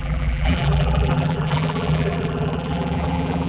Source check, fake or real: fake